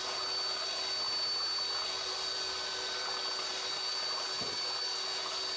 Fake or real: real